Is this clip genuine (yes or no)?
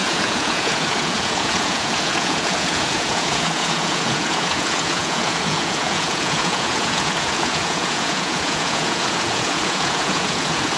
no